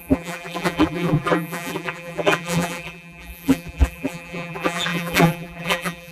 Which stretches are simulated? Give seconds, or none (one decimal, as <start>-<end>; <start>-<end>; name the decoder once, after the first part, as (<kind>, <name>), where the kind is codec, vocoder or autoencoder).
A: 0.0-6.1 (vocoder, BigVGAN v2)